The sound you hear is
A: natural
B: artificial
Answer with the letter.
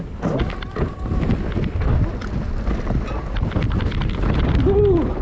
A